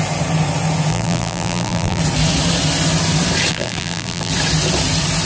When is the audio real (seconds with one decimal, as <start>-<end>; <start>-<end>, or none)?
0.0-0.9; 2.0-3.5; 4.3-5.3

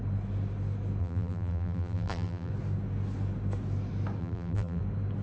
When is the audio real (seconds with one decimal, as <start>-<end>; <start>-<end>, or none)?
0.0-1.0; 2.5-4.2; 4.8-5.2

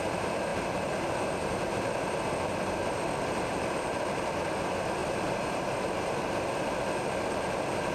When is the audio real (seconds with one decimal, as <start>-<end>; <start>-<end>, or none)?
0.0-5.0; 6.4-7.9

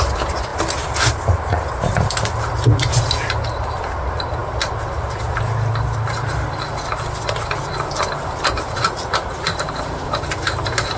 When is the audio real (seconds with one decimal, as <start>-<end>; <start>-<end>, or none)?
0.5-1.1

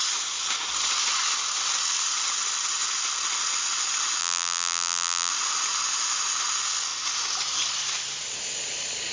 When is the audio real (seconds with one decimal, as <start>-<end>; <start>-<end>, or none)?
0.0-4.2; 5.3-9.1